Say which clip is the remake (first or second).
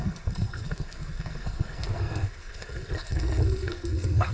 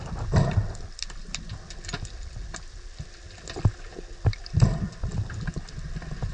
first